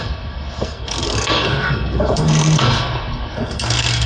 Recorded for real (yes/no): no